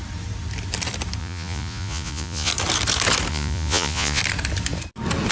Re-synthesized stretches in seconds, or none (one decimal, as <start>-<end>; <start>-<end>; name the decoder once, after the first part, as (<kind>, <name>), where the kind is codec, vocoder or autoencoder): 1.2-2.5 (vocoder, Vocos); 3.3-4.2